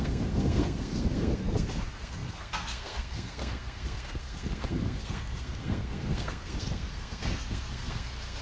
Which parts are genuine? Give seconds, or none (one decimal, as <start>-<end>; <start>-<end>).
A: none